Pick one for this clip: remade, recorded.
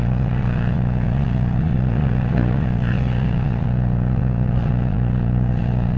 remade